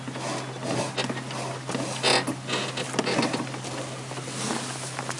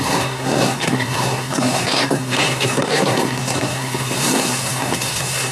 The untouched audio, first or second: first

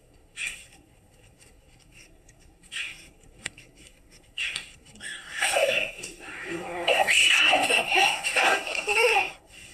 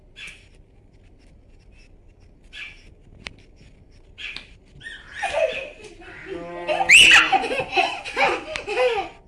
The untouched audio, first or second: second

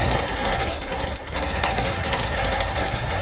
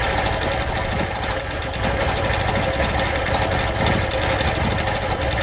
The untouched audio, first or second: second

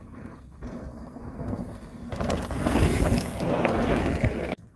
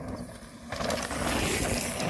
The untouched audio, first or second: second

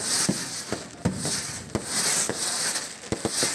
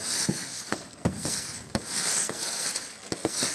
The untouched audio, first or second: first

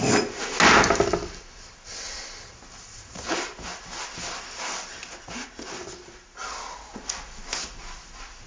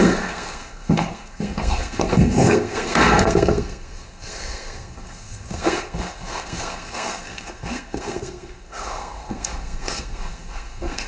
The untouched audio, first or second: first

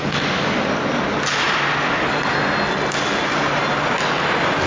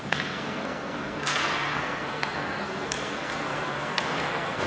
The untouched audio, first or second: first